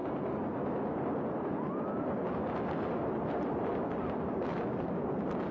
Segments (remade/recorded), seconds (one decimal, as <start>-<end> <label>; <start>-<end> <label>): 0.0-5.5 recorded